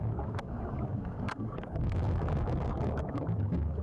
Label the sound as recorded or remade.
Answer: remade